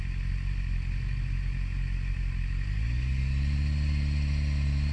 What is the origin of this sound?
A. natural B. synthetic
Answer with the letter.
A